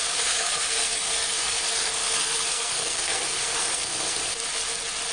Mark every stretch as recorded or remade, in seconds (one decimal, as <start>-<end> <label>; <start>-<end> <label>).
0.0-4.2 remade; 4.2-5.1 recorded